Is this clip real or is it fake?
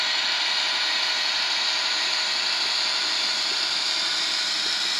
fake